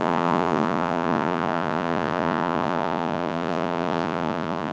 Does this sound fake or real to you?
fake